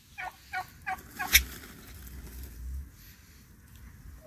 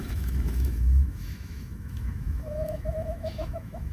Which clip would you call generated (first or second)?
second